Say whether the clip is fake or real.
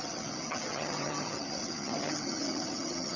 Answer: fake